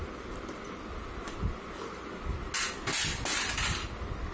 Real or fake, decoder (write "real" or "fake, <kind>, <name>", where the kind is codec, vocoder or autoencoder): real